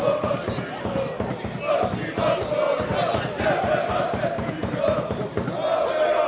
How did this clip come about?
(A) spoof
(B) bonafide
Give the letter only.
B